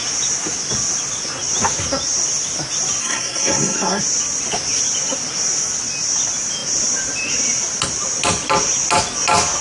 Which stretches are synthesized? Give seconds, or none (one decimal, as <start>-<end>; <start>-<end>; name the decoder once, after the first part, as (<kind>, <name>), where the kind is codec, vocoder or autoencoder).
3.0-4.0 (codec, SNAC)